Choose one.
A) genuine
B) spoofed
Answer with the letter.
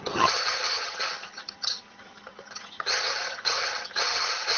B